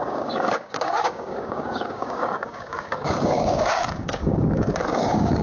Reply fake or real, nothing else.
fake